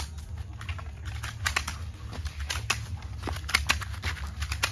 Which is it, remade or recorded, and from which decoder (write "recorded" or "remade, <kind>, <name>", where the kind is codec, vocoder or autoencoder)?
recorded